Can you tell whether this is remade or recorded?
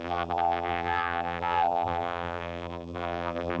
remade